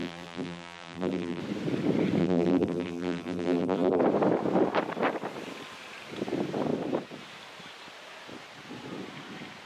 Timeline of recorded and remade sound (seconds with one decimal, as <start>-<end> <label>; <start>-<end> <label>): 0.0-1.4 remade; 1.4-2.2 recorded; 2.2-4.0 remade; 4.0-9.7 recorded